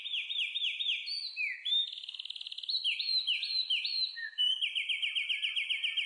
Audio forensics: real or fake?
fake